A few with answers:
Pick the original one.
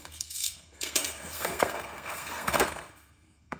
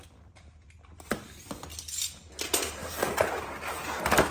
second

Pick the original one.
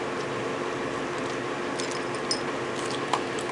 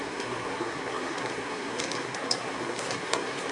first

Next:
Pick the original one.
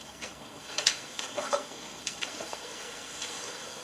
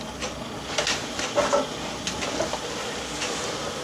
second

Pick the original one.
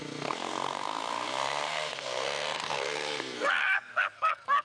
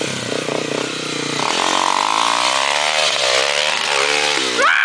second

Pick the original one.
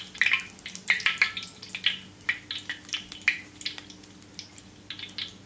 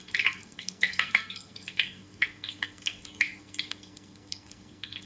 first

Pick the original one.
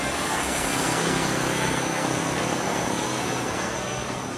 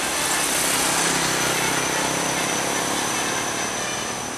second